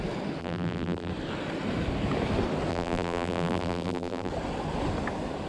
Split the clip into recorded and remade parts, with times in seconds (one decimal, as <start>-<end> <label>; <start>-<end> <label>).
0.0-0.4 recorded; 0.4-1.1 remade; 1.1-2.7 recorded; 2.7-4.3 remade; 4.3-5.5 recorded